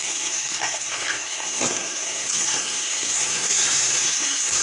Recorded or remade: remade